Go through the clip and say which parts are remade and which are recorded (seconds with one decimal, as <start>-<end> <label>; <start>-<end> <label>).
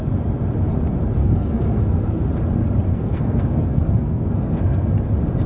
0.0-1.2 recorded; 1.2-2.2 remade; 2.2-2.9 recorded; 2.9-4.9 remade; 4.9-5.5 recorded